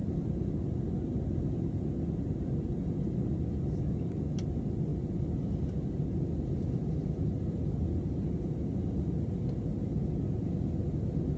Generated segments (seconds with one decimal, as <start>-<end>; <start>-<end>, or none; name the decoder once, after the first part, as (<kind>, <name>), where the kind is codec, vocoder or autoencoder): none